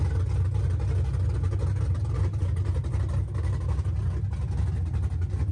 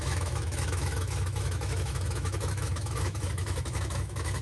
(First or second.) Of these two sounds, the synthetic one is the second